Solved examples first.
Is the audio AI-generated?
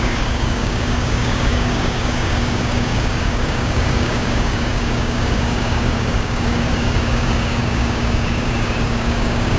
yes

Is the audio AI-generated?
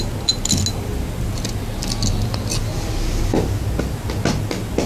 no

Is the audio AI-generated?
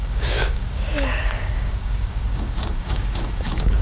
yes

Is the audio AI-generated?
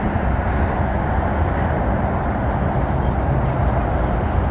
no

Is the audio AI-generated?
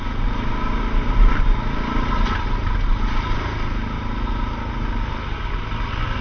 no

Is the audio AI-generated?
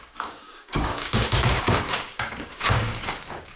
yes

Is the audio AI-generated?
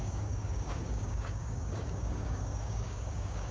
yes